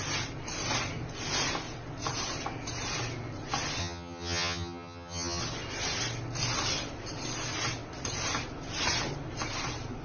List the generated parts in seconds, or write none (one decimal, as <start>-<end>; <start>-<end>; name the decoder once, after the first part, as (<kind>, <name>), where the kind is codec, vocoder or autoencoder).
3.8-5.4 (vocoder, HiFi-GAN)